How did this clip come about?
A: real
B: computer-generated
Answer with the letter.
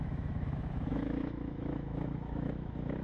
B